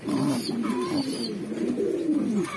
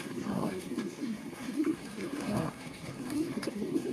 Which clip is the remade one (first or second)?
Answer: second